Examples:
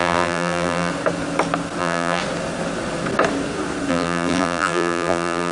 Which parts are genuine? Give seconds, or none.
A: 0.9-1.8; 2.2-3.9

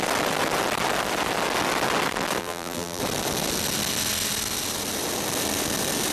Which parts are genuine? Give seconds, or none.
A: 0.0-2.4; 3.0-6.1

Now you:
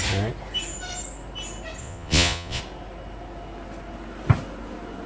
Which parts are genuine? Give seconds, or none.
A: 0.0-1.8; 2.6-5.1